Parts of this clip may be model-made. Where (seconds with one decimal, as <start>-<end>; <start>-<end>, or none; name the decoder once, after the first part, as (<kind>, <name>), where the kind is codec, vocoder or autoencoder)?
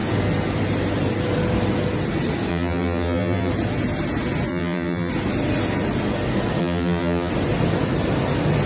2.5-3.5 (vocoder, BigVGAN v2); 4.5-5.1; 6.6-7.3